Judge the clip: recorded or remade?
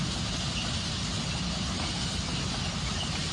recorded